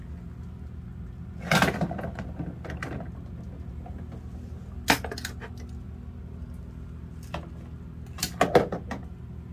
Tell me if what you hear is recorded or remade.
recorded